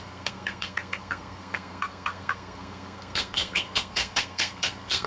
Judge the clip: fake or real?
fake